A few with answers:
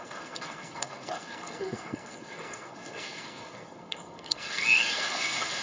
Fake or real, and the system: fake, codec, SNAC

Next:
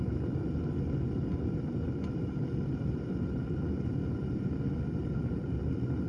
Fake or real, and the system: real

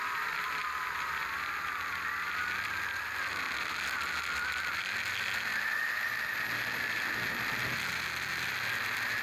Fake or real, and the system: real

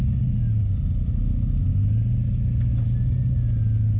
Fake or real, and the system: real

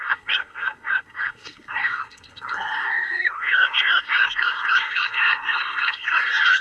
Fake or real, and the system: fake, codec, SNAC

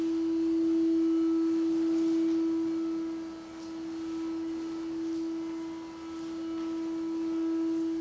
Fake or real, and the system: real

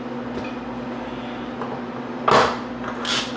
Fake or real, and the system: real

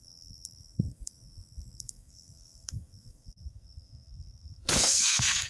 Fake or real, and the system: fake, codec, SNAC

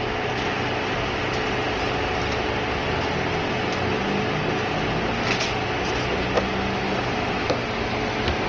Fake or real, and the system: real